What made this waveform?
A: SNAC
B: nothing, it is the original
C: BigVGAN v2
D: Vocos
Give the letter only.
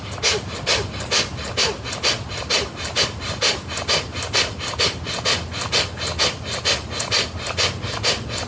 B